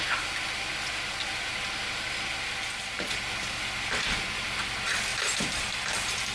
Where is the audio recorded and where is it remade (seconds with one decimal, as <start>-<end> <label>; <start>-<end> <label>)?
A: 0.0-6.3 recorded